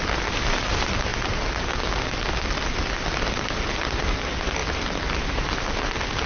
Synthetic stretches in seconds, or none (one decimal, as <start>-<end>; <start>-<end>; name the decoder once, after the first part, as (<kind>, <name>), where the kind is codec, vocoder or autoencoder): 0.0-4.6 (vocoder, BigVGAN v2); 5.1-6.3